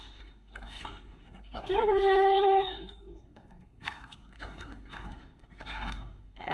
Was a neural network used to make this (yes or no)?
yes